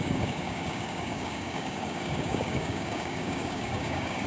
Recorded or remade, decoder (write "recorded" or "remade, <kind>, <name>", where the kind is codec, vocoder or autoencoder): remade, codec, DAC